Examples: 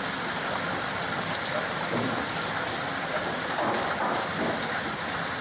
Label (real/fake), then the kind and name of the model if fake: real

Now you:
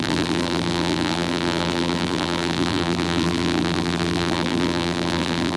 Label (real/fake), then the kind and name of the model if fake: fake, vocoder, BigVGAN v2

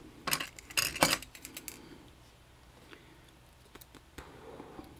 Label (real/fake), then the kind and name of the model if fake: real